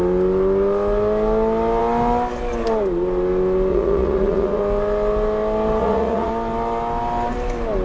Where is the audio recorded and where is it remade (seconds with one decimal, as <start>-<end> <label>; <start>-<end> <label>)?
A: 0.0-3.7 recorded; 3.7-4.6 remade; 4.6-5.8 recorded; 5.8-6.3 remade; 6.3-7.8 recorded